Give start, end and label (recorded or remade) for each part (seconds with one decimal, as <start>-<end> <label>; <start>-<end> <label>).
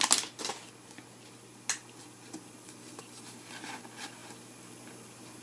0.0-5.4 recorded